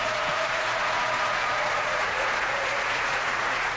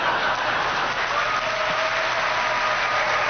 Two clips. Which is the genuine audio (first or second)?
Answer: second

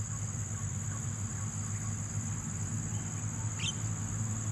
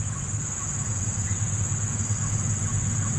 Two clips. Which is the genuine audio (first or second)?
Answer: first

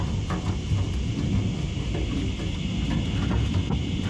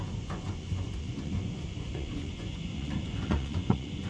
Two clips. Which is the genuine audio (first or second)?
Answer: first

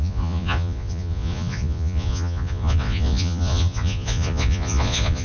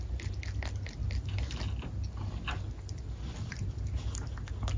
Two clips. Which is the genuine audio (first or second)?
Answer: second